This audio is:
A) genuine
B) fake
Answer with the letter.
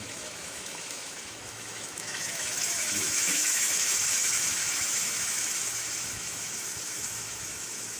B